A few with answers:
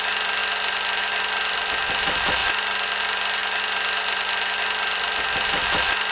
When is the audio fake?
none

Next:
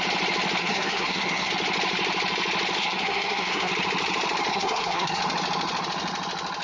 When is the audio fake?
0.6-1.5 (codec, SNAC); 2.8-3.7; 4.5-5.2

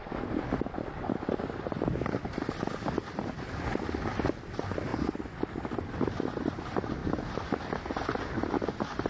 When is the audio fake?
0.0-4.9 (vocoder, BigVGAN v2); 6.2-9.1

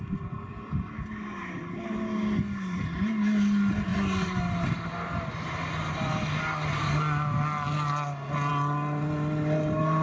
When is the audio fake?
none